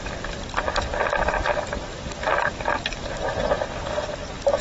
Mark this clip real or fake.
real